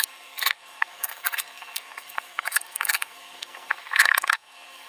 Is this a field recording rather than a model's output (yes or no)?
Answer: no